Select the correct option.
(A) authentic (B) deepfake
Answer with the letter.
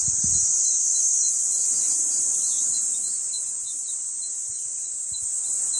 B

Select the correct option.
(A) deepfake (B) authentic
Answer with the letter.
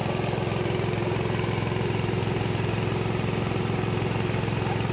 B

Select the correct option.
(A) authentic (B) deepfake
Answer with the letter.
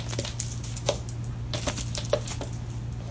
A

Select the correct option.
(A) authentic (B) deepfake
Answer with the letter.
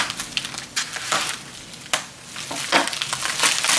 A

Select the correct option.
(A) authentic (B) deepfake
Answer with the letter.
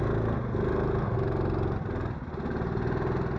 A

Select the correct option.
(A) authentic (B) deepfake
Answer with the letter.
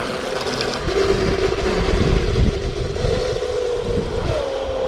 A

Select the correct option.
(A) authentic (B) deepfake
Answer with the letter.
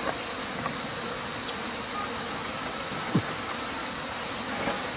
A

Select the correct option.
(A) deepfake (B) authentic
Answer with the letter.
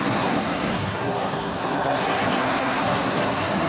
A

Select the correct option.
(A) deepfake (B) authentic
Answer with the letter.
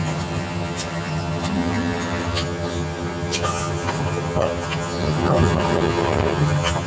A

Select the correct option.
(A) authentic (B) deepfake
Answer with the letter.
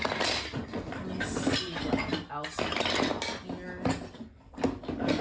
A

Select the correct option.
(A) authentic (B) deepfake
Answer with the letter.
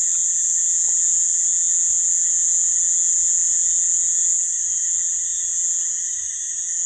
A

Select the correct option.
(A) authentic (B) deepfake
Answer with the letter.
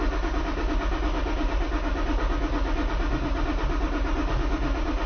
A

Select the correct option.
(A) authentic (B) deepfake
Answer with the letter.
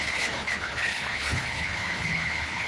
B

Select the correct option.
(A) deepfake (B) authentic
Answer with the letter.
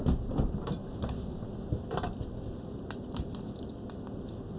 B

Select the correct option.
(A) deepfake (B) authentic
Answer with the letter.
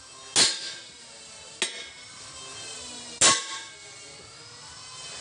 B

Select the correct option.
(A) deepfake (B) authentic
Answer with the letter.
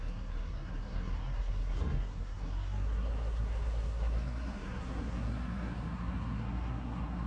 A